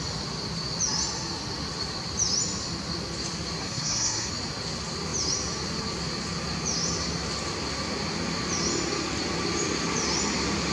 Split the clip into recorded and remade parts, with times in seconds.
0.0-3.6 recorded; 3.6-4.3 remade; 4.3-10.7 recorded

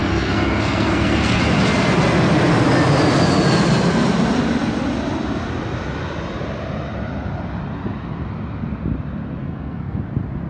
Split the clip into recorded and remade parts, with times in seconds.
0.0-1.4 remade; 1.4-9.4 recorded; 9.4-10.0 remade; 10.0-10.5 recorded

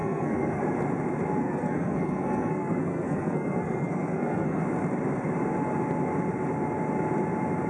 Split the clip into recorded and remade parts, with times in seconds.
0.0-0.6 remade; 0.6-1.4 recorded; 1.4-4.6 remade; 4.6-7.7 recorded